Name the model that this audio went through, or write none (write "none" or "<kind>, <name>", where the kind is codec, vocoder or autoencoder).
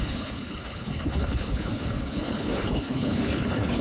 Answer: codec, HILCodec